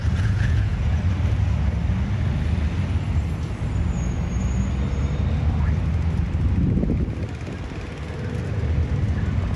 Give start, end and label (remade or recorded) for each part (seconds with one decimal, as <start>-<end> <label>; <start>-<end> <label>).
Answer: 0.0-1.0 remade; 1.0-9.6 recorded